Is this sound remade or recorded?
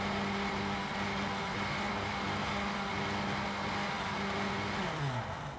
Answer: recorded